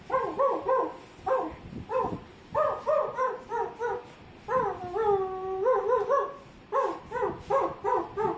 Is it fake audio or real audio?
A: real